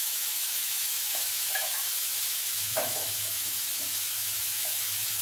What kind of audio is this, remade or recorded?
remade